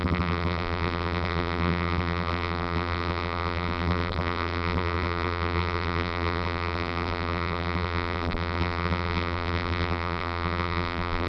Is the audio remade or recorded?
remade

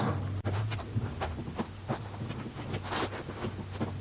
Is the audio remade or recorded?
recorded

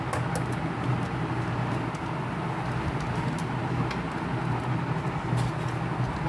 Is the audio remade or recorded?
recorded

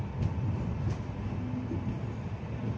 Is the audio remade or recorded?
recorded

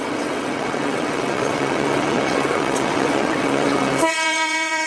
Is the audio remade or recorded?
remade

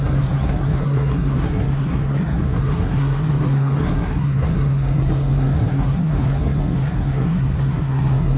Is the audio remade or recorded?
remade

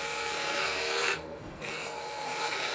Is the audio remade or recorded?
remade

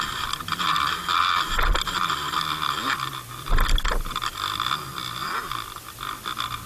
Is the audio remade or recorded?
recorded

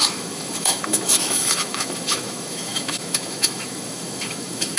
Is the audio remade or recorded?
remade